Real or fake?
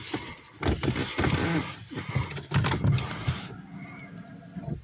real